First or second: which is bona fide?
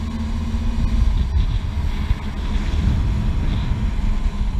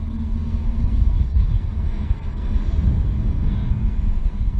first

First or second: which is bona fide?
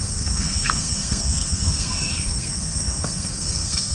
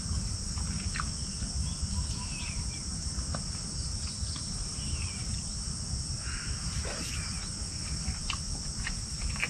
second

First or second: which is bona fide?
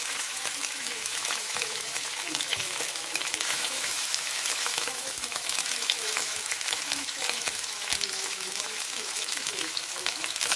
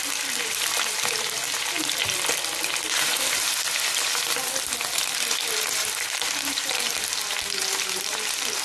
second